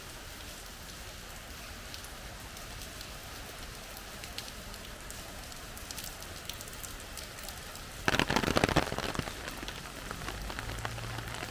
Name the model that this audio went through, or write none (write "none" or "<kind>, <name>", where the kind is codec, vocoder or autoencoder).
none